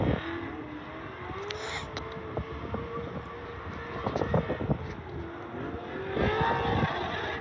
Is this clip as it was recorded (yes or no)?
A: yes